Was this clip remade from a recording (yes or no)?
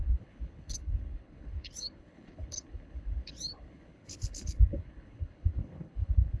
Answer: yes